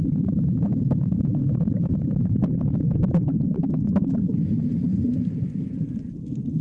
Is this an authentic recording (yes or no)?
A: no